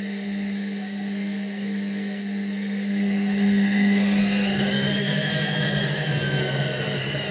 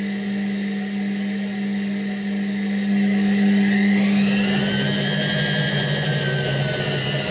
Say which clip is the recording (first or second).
second